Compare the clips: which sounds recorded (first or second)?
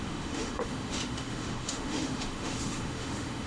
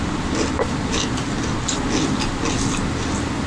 second